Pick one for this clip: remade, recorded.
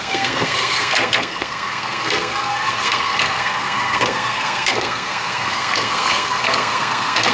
remade